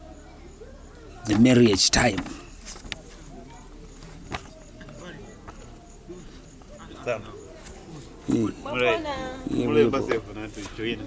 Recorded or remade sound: recorded